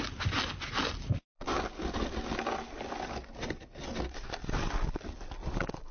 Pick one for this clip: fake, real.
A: real